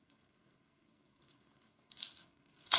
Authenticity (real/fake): fake